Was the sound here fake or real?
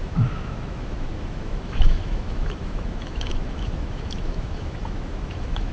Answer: fake